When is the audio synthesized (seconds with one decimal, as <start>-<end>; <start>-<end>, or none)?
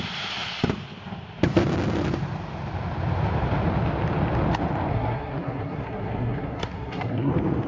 4.9-7.3